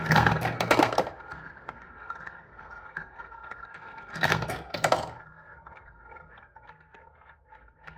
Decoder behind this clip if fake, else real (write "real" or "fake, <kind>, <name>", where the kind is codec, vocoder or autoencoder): fake, codec, SNAC